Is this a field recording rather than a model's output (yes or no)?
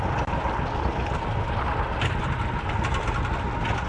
yes